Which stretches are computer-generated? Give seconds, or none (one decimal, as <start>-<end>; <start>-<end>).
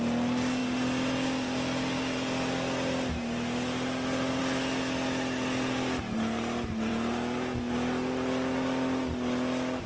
none